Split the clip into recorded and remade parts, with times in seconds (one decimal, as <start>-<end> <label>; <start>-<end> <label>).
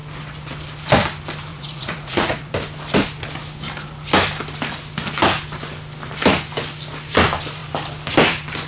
0.0-1.5 recorded; 1.5-2.5 remade; 2.5-8.7 recorded